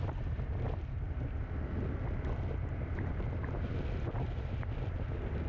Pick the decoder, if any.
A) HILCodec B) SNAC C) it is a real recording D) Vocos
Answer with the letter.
C